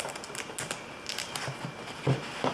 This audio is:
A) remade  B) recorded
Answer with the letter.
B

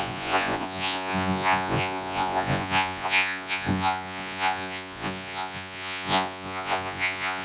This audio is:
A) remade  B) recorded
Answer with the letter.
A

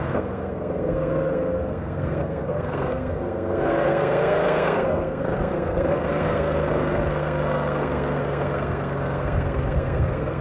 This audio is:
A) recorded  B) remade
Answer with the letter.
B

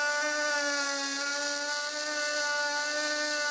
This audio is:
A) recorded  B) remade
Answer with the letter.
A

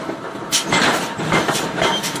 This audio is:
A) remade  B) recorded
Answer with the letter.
A